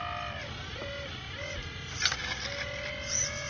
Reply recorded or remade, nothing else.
recorded